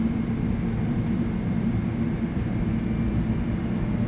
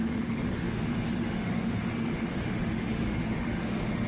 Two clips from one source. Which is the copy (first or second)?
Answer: second